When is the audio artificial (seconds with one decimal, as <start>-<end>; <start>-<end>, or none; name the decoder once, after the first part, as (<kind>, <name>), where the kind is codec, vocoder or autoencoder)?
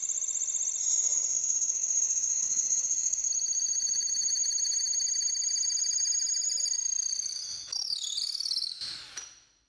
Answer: 0.8-3.3 (codec, SNAC)